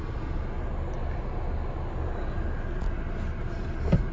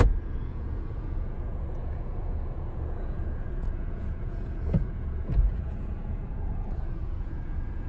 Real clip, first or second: first